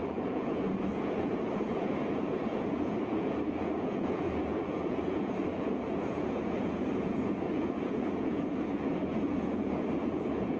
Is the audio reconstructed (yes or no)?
yes